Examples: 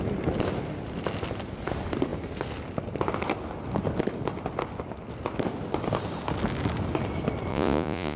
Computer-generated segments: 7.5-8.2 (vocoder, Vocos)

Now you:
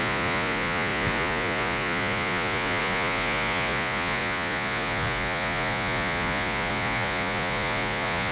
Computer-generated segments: 0.0-8.3 (vocoder, Vocos)

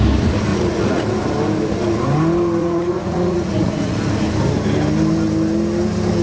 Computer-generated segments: 0.5-1.0 (vocoder, Vocos); 2.6-4.0

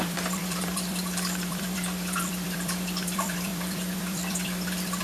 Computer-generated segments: 0.0-5.0 (vocoder, BigVGAN v2)

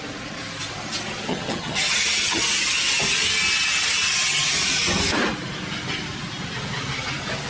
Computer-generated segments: 1.3-2.4 (vocoder, HiFi-GAN)

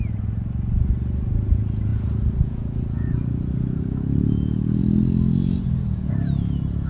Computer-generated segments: 1.9-4.8 (vocoder, Vocos); 5.3-6.1

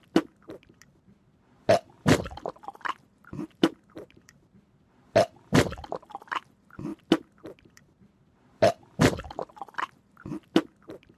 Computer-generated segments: 3.2-4.5 (vocoder, BigVGAN v2)

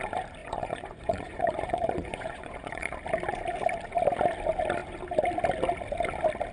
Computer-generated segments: 0.4-2.9 (vocoder, Vocos)